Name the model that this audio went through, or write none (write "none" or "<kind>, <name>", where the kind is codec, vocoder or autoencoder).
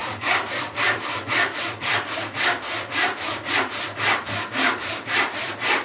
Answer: vocoder, BigVGAN v2